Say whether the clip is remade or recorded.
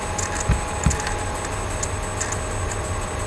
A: recorded